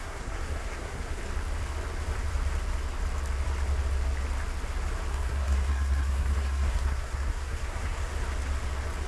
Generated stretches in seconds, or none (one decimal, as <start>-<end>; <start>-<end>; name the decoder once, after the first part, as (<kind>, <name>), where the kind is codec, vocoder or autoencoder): 0.0-1.2 (codec, SNAC); 5.1-8.1